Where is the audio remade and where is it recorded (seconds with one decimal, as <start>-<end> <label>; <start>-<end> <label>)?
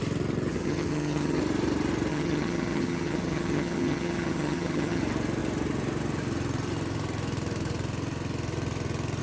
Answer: 0.0-0.5 recorded; 0.5-1.4 remade; 1.4-2.1 recorded; 2.1-5.0 remade; 5.0-9.2 recorded